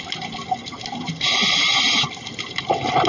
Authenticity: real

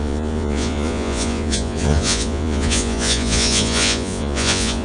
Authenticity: fake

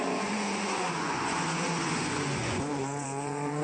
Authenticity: fake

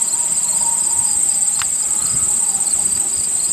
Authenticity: real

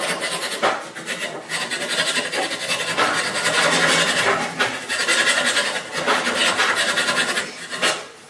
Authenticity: real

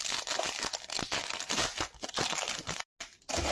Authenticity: real